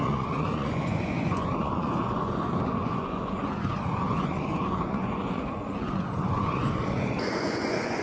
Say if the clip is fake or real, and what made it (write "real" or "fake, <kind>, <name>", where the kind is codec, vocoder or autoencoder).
fake, vocoder, Vocos